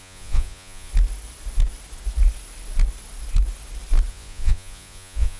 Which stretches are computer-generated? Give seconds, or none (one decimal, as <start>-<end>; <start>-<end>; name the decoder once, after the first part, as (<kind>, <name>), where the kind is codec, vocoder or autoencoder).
0.0-0.9 (vocoder, Vocos); 4.1-5.4

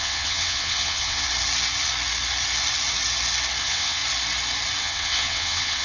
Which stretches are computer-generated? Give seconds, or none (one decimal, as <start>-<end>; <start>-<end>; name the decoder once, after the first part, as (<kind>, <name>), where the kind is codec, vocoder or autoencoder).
0.0-1.3 (vocoder, WaveNeXt); 3.6-4.0; 4.8-5.8

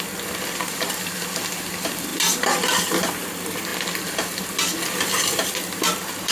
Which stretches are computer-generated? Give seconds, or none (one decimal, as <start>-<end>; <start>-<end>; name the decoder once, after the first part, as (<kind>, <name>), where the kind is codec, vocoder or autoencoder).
0.0-6.3 (vocoder, BigVGAN v2)

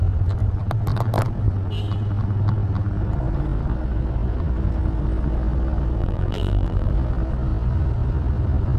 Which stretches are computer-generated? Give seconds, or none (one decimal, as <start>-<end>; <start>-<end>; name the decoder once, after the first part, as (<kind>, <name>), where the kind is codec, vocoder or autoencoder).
6.0-6.9 (vocoder, BigVGAN v2)

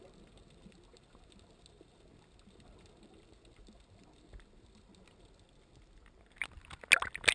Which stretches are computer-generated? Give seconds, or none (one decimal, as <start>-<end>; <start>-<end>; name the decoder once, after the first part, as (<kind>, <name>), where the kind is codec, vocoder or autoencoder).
none

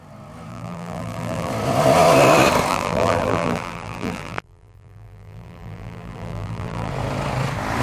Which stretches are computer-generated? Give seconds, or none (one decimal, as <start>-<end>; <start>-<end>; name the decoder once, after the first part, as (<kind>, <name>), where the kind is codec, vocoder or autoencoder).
0.5-1.5 (vocoder, BigVGAN v2); 2.7-6.9

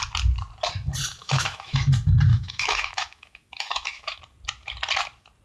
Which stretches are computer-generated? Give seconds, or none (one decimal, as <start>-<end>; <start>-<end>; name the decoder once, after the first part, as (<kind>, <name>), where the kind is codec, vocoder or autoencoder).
1.2-1.8 (autoencoder, DAC-VAE); 2.3-4.2